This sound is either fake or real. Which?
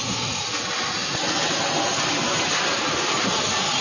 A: real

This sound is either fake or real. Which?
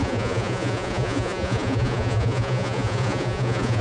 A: fake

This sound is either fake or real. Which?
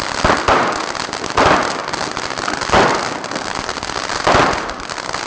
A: real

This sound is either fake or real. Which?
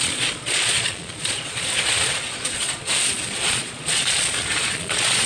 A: fake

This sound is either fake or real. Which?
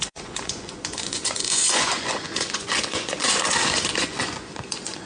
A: fake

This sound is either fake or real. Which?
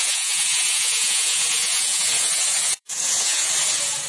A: fake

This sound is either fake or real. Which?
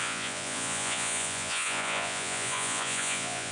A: fake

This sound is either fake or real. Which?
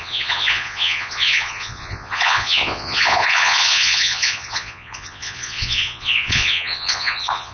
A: fake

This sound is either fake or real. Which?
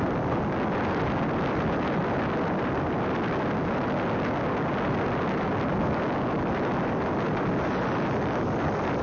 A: real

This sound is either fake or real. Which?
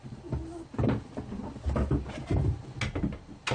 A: real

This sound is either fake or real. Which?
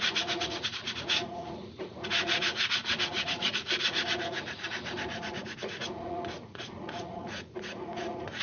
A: fake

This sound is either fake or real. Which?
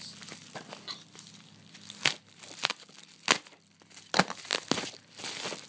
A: real